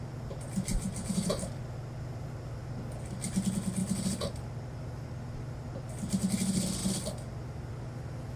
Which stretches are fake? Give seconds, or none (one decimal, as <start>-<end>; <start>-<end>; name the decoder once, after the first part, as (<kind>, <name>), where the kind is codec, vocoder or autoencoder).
0.7-1.5 (vocoder, BigVGAN v2)